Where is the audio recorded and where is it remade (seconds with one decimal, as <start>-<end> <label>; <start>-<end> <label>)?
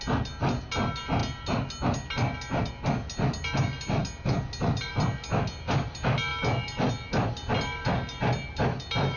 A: 0.0-9.2 recorded